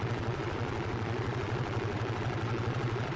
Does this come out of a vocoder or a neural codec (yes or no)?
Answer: yes